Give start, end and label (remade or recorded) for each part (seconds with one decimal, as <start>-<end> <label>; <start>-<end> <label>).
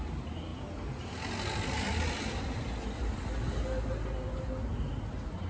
0.0-5.5 recorded